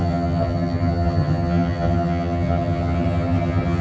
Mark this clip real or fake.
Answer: fake